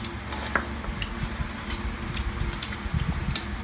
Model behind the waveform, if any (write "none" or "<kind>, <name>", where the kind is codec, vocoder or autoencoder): none